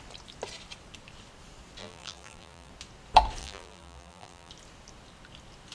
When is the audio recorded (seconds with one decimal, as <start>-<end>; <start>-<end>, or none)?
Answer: 0.0-1.8; 2.7-3.4; 4.5-5.7